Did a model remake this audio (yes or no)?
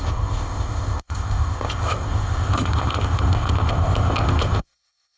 yes